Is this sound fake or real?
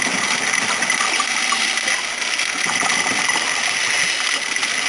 real